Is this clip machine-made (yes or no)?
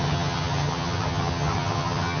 yes